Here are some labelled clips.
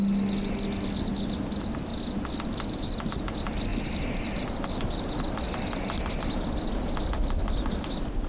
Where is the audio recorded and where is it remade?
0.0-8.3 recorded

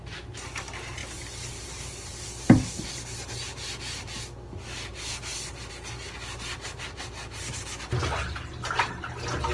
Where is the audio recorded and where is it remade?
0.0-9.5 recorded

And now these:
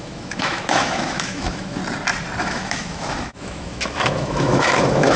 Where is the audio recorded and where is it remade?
0.0-1.8 remade; 1.8-2.4 recorded; 2.4-5.2 remade

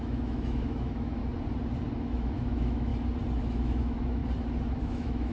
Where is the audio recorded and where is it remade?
0.0-1.2 remade; 1.2-2.0 recorded; 2.0-2.9 remade; 2.9-3.4 recorded; 3.4-4.2 remade; 4.2-4.8 recorded; 4.8-5.3 remade